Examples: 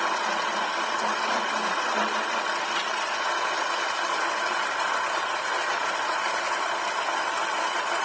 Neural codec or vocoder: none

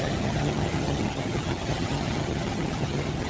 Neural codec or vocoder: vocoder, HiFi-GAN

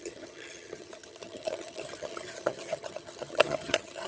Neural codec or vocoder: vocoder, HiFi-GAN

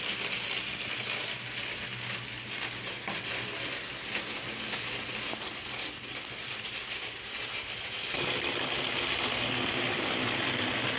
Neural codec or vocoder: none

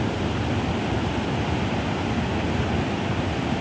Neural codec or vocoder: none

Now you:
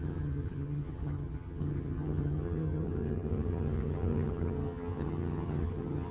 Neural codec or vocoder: vocoder, HiFi-GAN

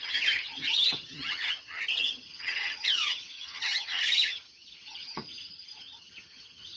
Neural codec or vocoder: vocoder, HiFi-GAN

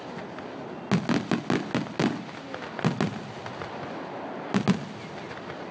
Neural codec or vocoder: none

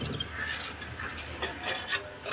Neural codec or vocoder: none